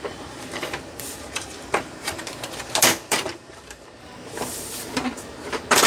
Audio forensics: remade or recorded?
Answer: remade